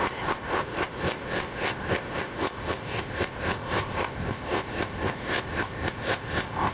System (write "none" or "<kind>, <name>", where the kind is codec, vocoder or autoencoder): codec, ZipCodec